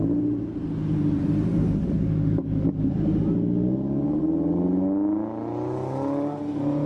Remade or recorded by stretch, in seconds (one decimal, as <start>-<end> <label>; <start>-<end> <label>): 0.0-1.5 recorded; 1.5-4.2 remade; 4.2-6.9 recorded